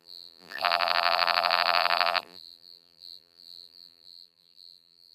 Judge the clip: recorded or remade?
remade